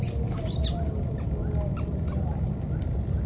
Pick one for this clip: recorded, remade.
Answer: recorded